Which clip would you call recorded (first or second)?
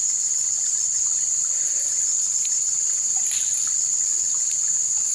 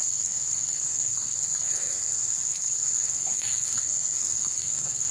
first